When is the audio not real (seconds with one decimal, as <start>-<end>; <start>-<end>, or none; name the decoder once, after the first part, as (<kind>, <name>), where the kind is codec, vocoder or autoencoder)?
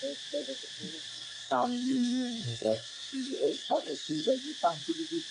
1.1-4.3 (codec, SNAC)